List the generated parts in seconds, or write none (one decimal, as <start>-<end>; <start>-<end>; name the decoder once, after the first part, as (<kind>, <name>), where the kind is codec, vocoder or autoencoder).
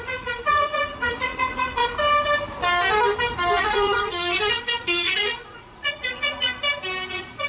0.0-1.8 (vocoder, Vocos); 3.6-6.5; 7.1-7.5